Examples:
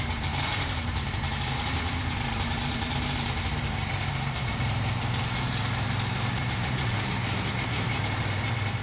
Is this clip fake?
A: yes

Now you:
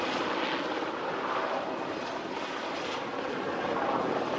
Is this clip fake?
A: no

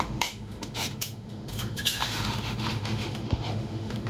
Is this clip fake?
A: yes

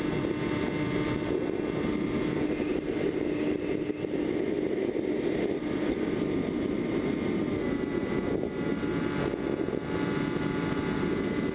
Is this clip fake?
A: no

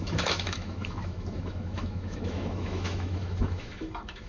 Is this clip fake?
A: yes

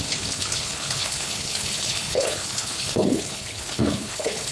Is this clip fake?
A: yes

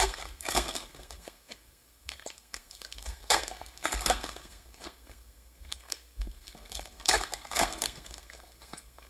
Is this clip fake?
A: yes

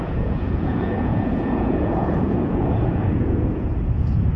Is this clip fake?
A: yes